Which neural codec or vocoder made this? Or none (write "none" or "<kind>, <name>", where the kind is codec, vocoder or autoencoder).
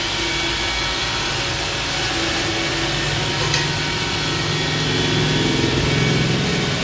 none